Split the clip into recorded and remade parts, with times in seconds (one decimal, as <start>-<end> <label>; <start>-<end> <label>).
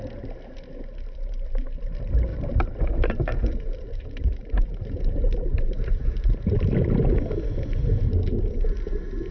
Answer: 0.0-2.3 recorded; 2.3-6.2 remade; 6.2-9.3 recorded